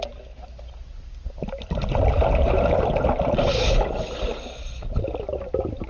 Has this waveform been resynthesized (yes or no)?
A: no